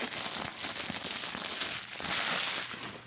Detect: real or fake real